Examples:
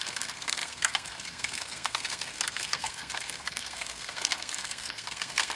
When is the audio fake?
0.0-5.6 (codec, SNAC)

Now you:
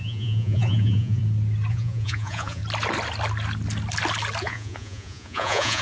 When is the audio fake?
0.0-1.2 (vocoder, Vocos); 1.7-2.6; 4.4-5.8

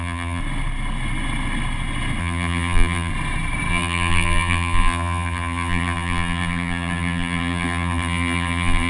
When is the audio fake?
0.0-0.4 (vocoder, BigVGAN v2); 2.2-3.1; 3.7-8.9

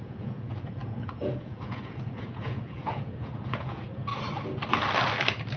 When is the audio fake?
0.0-4.1 (vocoder, Vocos)

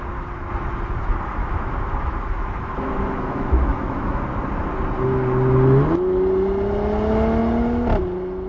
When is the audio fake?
1.4-4.2 (autoencoder, DAC-VAE)

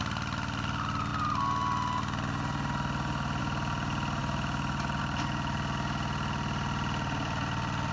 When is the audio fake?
4.2-5.0 (vocoder, BigVGAN v2)

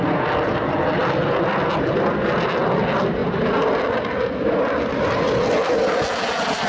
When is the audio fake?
none

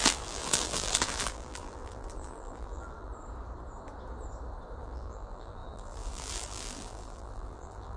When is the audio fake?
0.0-3.1 (vocoder, BigVGAN v2); 4.8-8.0